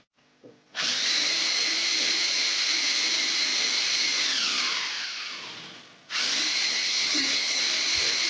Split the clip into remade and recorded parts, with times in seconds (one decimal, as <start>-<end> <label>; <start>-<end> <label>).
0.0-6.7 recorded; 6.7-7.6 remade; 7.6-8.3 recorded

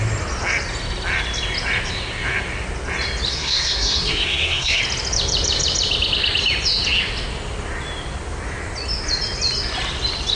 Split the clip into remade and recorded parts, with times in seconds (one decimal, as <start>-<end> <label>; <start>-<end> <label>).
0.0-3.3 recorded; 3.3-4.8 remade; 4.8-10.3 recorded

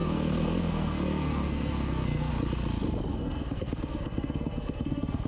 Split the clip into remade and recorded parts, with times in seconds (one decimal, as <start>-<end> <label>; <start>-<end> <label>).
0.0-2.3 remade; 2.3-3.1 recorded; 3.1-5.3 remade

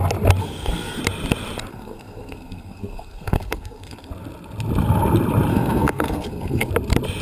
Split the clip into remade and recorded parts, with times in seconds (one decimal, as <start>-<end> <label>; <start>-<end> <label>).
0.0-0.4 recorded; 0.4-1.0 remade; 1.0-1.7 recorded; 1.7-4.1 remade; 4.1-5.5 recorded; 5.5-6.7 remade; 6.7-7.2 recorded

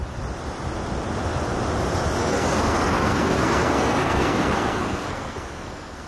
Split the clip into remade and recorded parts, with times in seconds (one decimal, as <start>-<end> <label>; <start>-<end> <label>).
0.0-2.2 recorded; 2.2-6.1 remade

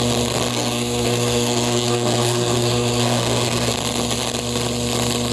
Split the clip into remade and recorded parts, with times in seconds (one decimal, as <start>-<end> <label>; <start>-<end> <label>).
0.0-0.5 recorded; 0.5-3.7 remade; 3.7-5.3 recorded

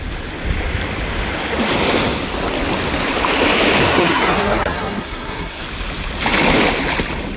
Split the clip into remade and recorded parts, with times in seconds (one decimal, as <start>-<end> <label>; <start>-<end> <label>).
0.0-3.9 recorded; 3.9-5.6 remade; 5.6-7.4 recorded

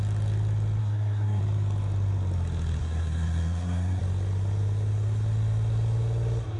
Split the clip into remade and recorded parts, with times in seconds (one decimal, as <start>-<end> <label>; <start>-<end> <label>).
0.0-0.8 recorded; 0.8-1.4 remade; 1.4-2.8 recorded; 2.8-4.0 remade; 4.0-6.6 recorded